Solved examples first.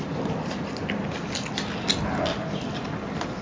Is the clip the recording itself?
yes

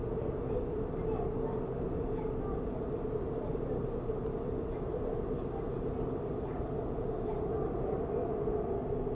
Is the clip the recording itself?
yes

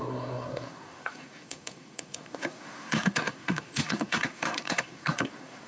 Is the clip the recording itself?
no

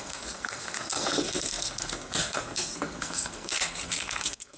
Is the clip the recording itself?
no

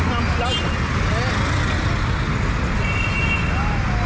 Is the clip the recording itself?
yes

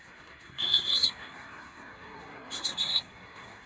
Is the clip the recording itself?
no